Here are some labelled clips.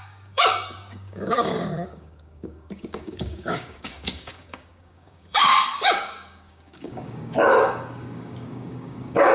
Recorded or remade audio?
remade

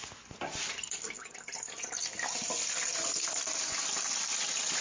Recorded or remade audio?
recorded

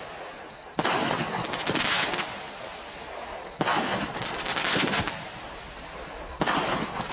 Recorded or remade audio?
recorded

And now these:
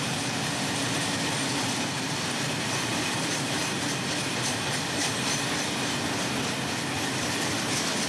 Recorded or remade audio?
remade